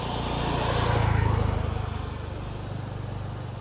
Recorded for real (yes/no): yes